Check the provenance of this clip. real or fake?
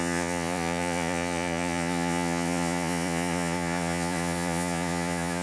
fake